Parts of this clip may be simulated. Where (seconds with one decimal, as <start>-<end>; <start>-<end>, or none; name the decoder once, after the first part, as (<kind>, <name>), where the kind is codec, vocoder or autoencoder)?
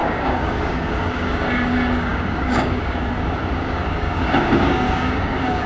0.0-5.7 (codec, DAC)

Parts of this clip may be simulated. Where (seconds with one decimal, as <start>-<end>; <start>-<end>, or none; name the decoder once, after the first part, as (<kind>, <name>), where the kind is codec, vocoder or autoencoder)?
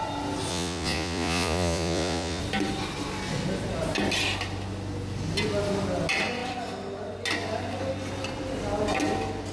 0.5-2.4 (vocoder, Vocos)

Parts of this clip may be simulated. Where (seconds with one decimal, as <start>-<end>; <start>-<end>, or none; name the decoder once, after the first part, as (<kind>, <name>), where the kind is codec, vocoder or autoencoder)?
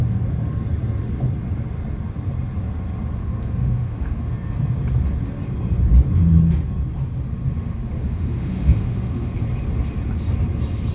3.2-4.3 (autoencoder, DAC-VAE); 8.0-9.3